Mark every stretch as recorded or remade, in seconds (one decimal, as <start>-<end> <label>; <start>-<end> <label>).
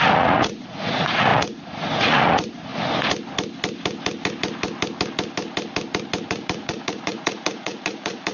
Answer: 0.0-2.7 remade; 2.7-6.3 recorded; 6.3-8.3 remade